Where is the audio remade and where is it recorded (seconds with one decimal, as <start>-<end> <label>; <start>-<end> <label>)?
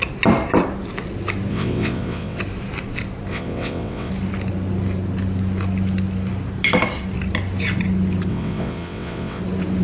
0.0-1.5 recorded; 1.5-2.4 remade; 2.4-3.3 recorded; 3.3-4.1 remade; 4.1-8.3 recorded; 8.3-9.4 remade; 9.4-9.8 recorded